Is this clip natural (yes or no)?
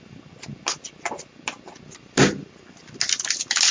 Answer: yes